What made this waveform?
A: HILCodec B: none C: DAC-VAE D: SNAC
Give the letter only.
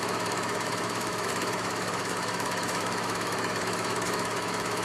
C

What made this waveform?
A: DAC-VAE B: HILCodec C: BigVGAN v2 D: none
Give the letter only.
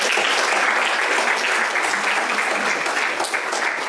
D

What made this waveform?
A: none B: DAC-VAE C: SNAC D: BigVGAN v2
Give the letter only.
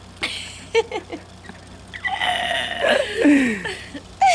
A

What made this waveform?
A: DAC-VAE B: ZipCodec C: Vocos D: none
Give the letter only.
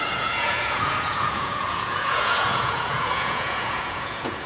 C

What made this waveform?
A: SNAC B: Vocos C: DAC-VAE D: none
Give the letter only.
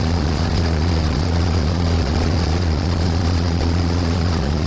B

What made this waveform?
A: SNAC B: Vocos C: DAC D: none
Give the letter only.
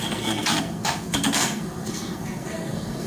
A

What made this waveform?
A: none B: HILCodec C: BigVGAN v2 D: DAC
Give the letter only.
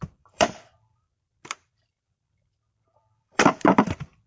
C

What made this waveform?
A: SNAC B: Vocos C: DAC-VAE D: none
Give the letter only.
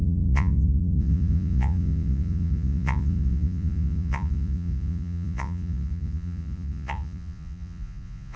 B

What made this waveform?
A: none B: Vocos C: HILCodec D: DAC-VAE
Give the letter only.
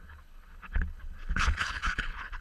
C